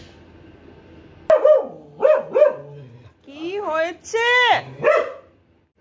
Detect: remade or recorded recorded